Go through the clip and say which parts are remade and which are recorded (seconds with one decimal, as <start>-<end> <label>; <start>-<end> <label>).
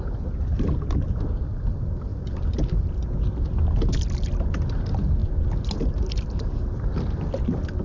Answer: 0.0-7.8 recorded